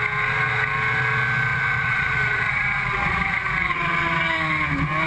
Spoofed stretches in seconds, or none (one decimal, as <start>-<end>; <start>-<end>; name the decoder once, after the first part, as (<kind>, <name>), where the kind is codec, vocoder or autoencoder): 1.5-3.7 (vocoder, Vocos)